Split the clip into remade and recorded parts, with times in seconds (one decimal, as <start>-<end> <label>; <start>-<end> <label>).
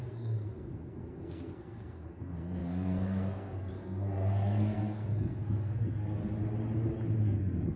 0.0-6.2 remade; 6.2-7.2 recorded; 7.2-7.8 remade